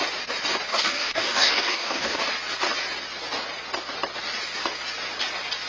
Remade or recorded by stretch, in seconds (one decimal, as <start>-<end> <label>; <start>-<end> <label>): 0.0-0.7 recorded; 0.7-2.2 remade; 2.2-5.7 recorded